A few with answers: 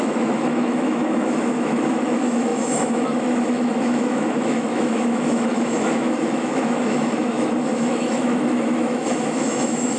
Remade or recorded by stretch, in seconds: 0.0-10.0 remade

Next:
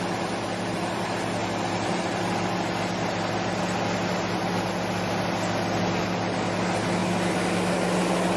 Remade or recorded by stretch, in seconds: 0.0-8.4 recorded